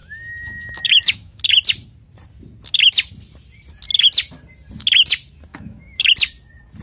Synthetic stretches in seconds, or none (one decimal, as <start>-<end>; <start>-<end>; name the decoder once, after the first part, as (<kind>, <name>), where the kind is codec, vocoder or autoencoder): 0.0-1.4 (autoencoder, DAC-VAE); 5.5-6.1